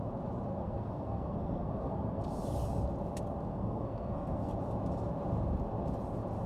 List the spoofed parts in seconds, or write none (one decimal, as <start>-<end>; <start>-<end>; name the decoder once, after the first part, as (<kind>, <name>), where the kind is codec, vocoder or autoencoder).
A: 0.6-2.2 (codec, SNAC); 3.5-4.5

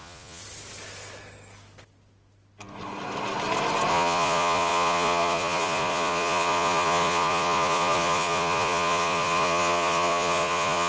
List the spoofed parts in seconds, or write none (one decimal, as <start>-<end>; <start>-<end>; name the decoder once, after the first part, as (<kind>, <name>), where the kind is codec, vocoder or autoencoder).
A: 0.0-0.4 (vocoder, Vocos); 3.9-10.9

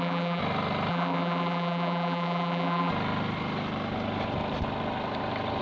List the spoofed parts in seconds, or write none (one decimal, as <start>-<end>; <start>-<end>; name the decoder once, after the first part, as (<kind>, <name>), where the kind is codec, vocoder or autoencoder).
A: 0.0-0.4 (vocoder, BigVGAN v2); 0.9-2.9

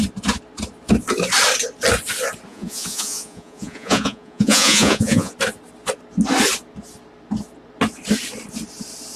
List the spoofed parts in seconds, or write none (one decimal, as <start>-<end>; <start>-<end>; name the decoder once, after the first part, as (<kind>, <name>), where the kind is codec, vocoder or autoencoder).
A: 2.5-5.3 (vocoder, Vocos)

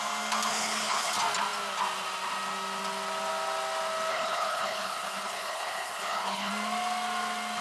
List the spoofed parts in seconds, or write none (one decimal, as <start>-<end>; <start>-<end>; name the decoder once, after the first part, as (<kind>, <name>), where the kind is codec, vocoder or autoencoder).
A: 0.5-1.1 (codec, HILCodec); 4.1-6.5

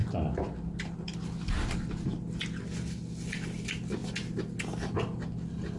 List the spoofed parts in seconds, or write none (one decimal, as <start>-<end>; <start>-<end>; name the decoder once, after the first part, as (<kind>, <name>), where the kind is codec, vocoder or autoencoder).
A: none